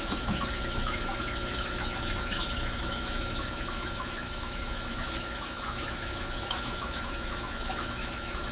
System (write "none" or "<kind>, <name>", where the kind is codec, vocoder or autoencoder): autoencoder, DAC-VAE